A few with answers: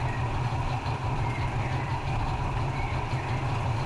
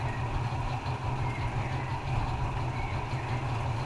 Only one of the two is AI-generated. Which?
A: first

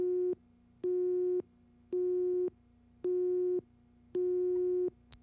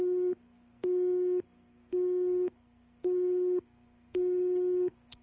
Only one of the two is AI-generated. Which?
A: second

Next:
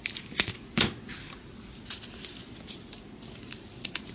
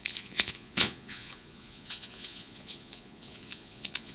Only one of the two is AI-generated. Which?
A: second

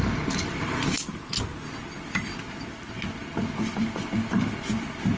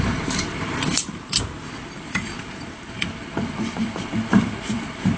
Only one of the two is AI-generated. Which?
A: second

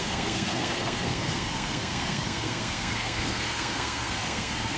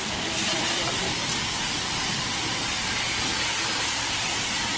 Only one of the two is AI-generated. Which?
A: first